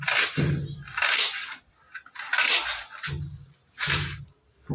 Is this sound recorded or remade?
recorded